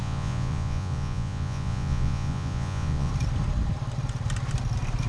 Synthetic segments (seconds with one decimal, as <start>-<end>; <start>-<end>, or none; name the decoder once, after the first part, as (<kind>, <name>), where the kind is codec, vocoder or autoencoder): 0.0-3.1 (vocoder, Vocos)